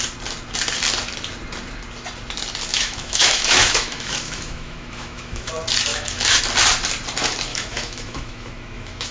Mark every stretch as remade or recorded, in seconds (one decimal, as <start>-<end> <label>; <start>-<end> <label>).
0.0-2.7 recorded; 2.7-5.5 remade; 5.5-5.9 recorded; 5.9-6.4 remade; 6.4-7.5 recorded; 7.5-9.1 remade